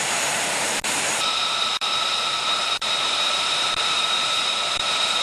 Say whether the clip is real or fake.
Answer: fake